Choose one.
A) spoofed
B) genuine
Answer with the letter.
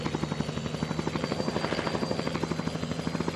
B